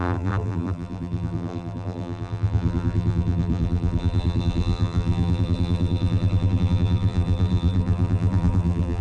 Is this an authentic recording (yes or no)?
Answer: no